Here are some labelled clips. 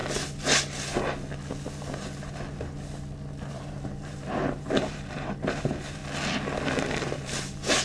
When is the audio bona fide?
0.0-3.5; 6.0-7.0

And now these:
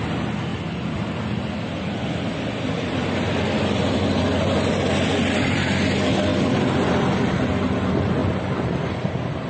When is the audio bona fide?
0.0-0.5; 2.7-8.2; 9.1-9.5

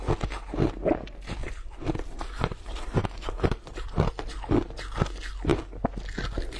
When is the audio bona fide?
0.0-1.4; 4.1-6.6

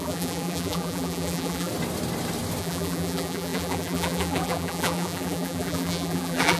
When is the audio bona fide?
1.7-2.6

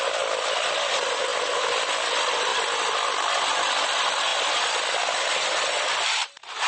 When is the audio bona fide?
0.0-6.7

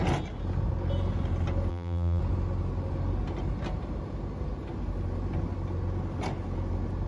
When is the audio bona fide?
0.0-1.7; 2.2-7.1

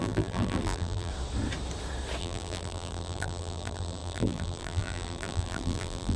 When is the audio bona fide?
1.1-2.2

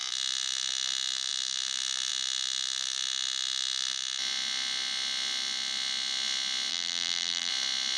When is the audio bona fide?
0.0-6.7; 7.5-8.0